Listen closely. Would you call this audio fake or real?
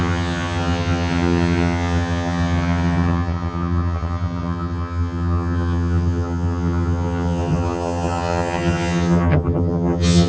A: fake